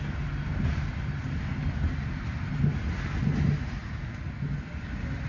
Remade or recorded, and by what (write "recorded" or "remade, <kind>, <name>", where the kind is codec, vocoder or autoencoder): recorded